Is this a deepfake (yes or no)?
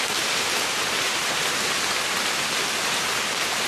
no